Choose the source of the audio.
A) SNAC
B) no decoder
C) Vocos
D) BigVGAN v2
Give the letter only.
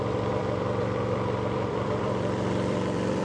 D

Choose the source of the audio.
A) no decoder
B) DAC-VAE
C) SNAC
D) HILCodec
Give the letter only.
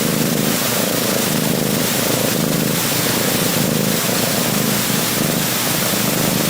A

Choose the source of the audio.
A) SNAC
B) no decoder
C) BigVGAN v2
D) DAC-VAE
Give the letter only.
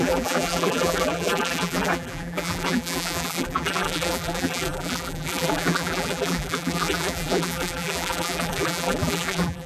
C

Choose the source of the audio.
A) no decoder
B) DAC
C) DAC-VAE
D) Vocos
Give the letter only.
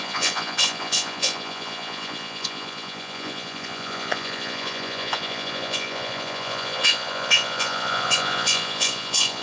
D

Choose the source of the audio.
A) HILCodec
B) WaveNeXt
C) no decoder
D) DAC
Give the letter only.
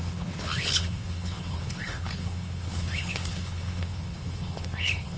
A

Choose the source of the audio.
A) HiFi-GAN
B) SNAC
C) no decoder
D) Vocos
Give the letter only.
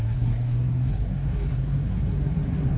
B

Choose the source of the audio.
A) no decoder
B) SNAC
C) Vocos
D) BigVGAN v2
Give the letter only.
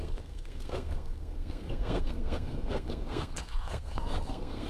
B